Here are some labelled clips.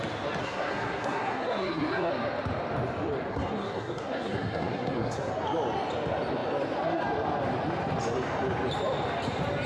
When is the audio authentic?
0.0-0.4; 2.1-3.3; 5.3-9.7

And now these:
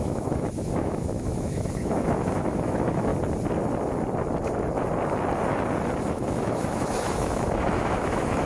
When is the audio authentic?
3.1-6.1

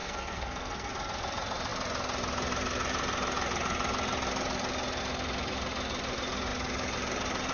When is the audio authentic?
0.9-7.5

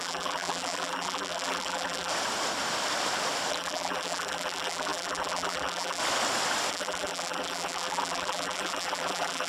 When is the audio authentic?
2.1-3.5; 6.0-6.7

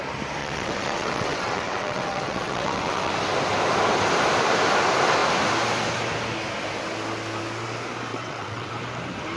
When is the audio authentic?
0.0-0.4; 3.1-8.1; 8.7-9.4